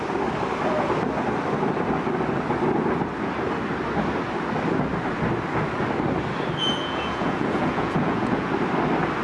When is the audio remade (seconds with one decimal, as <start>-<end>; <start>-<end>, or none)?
6.6-8.5